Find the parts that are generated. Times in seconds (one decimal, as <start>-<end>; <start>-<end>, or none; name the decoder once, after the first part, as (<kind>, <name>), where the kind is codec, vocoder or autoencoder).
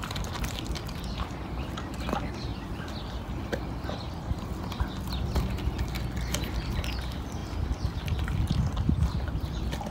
none